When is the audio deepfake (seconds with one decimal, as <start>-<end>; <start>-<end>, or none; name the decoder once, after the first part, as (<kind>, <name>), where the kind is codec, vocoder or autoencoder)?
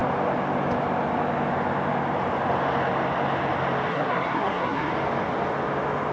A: 3.9-4.9 (codec, SNAC)